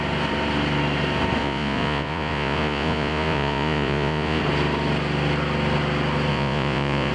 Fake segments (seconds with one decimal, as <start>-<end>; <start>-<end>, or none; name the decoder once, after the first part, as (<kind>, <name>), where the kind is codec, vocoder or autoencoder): 1.4-4.4 (vocoder, Vocos); 6.3-7.1

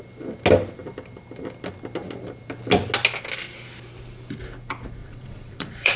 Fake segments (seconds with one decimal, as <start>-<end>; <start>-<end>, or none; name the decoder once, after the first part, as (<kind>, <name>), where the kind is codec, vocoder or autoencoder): 5.0-6.0 (vocoder, Vocos)

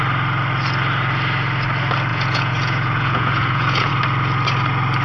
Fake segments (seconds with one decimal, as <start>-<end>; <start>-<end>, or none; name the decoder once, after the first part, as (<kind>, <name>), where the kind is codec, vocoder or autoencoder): 2.1-3.9 (vocoder, Vocos)

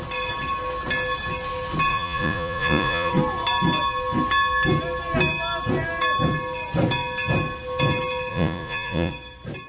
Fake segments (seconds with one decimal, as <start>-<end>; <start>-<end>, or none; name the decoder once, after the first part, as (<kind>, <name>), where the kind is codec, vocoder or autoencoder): 1.9-3.1 (vocoder, Vocos); 8.3-9.1

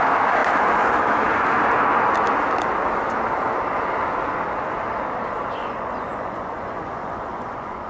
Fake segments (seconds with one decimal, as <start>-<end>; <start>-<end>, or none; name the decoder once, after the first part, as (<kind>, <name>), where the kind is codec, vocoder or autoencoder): 5.6-7.9 (vocoder, Vocos)

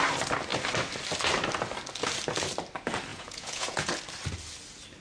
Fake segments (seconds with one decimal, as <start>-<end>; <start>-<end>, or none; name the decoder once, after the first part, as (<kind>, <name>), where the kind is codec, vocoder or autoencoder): 3.1-3.9 (vocoder, Vocos)

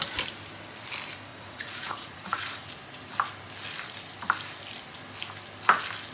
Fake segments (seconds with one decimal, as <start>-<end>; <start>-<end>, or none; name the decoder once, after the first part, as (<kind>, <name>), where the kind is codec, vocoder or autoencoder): 1.3-2.7 (vocoder, Vocos)